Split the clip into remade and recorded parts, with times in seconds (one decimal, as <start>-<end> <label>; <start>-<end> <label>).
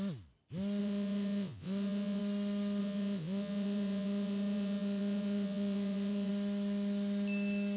0.0-0.8 recorded; 0.8-2.2 remade; 2.2-2.8 recorded; 2.8-6.3 remade; 6.3-7.8 recorded